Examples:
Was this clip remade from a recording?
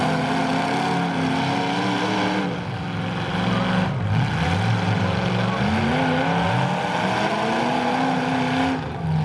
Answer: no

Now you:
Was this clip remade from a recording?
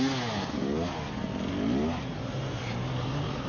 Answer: no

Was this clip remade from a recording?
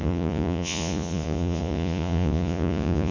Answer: yes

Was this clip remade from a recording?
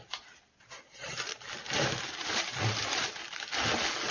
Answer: no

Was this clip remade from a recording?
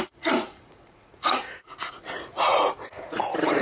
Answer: yes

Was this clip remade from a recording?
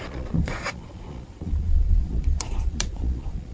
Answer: yes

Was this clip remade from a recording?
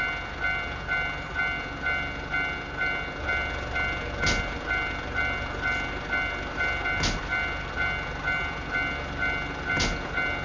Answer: no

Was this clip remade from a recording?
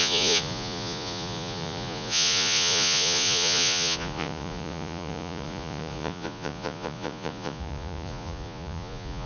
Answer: yes